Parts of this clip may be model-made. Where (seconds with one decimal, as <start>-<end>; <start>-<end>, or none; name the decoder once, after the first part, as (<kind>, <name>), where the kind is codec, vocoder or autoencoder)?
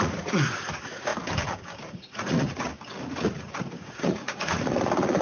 0.0-1.1 (vocoder, Vocos); 1.9-2.7; 3.3-5.2